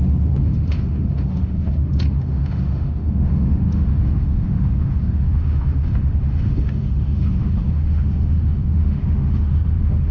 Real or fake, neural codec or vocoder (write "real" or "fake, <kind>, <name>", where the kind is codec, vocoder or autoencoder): fake, autoencoder, DAC-VAE